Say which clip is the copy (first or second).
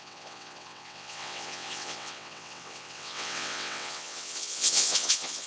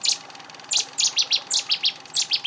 first